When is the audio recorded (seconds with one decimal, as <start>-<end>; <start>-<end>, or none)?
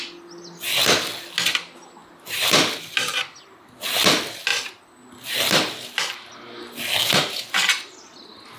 0.0-8.6